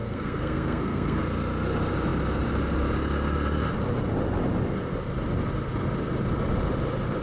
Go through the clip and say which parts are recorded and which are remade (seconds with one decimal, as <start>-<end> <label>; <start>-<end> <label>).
0.0-1.2 remade; 1.2-7.2 recorded